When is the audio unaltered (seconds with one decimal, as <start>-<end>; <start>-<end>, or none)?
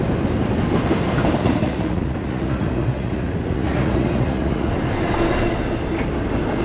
0.0-1.4; 4.7-6.6